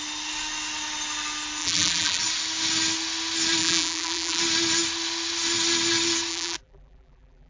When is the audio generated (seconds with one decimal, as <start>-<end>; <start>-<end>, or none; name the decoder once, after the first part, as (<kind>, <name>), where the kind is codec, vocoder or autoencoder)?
1.6-2.2 (vocoder, BigVGAN v2); 3.6-4.4; 6.3-7.5